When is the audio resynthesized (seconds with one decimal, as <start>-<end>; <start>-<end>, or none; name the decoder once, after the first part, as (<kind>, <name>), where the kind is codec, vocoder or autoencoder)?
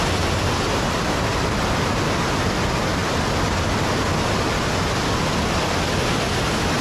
none